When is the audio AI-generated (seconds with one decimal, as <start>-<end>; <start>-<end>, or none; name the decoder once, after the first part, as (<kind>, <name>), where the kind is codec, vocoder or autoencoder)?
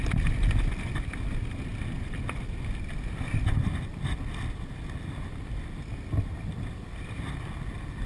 none